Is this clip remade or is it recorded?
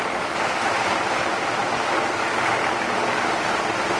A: recorded